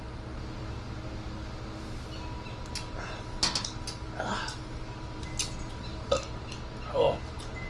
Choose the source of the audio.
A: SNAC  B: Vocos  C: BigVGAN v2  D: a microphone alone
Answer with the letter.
D